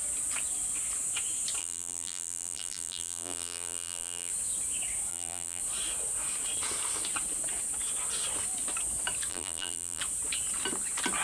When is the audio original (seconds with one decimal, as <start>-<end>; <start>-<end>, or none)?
0.0-1.6; 4.3-5.1; 5.6-9.3; 10.0-11.2